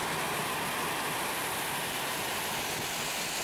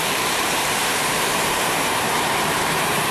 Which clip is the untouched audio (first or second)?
first